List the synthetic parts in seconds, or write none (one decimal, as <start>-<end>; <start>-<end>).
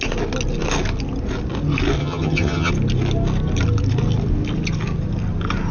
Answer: 2.0-2.7